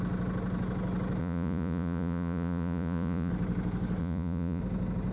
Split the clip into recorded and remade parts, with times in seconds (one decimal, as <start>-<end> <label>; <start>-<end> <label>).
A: 0.0-1.2 recorded; 1.2-3.3 remade; 3.3-4.0 recorded; 4.0-4.6 remade; 4.6-5.1 recorded